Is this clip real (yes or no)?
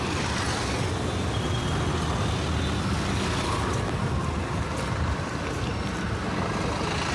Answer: yes